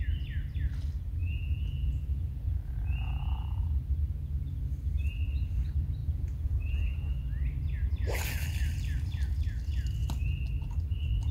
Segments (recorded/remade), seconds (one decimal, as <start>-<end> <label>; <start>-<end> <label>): 0.0-1.2 recorded; 1.2-3.6 remade; 3.6-6.0 recorded; 6.0-7.0 remade; 7.0-11.3 recorded